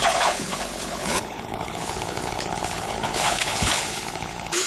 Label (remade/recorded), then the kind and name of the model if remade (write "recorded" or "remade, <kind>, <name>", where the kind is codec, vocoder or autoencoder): remade, codec, HILCodec